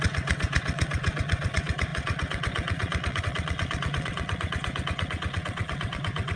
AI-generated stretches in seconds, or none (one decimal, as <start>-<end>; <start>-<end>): 0.0-6.4

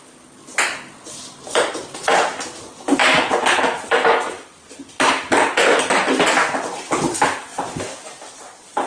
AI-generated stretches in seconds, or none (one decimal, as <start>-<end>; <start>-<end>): 3.0-5.9; 7.5-8.3

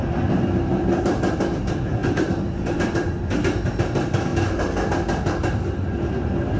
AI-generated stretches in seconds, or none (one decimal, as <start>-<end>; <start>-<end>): none

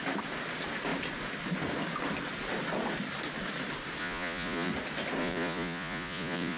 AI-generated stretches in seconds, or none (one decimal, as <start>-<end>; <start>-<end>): 4.0-4.7; 5.2-6.6

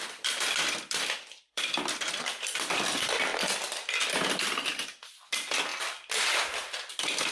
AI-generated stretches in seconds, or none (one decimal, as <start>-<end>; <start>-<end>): 0.0-5.7; 6.3-7.3